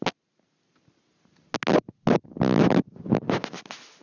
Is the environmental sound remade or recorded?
recorded